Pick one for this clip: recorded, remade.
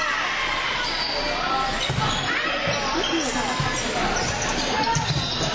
recorded